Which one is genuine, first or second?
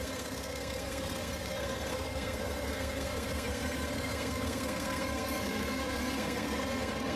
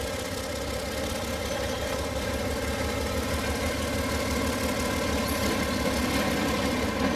second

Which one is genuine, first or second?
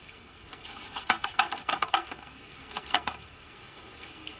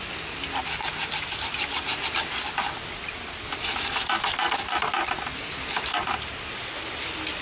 second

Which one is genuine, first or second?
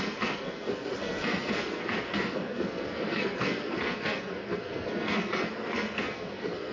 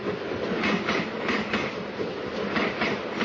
second